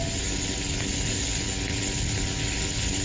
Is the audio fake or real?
real